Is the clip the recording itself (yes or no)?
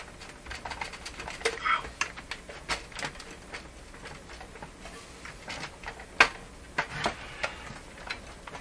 yes